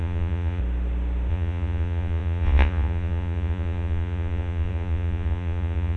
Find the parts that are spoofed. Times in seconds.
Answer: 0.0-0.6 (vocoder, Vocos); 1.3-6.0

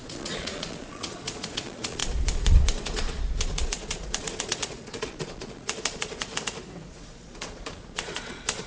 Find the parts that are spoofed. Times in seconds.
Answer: 0.0-6.3 (vocoder, Vocos); 6.9-8.7

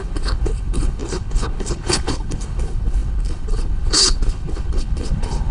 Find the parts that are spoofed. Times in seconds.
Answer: 0.0-5.5 (codec, HILCodec)